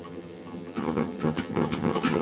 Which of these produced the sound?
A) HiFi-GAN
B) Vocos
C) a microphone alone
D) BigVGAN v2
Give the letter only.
A